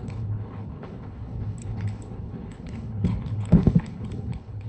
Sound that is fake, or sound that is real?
fake